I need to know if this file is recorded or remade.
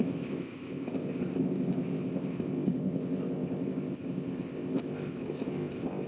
remade